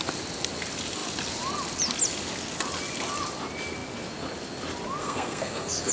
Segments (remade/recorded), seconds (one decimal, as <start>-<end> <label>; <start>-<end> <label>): 0.0-5.0 recorded; 5.0-5.9 remade